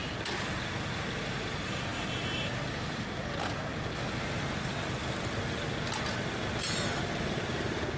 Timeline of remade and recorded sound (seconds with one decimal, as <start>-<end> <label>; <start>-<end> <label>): 0.0-8.0 recorded